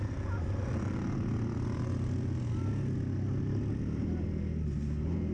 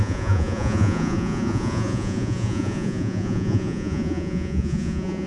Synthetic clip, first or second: second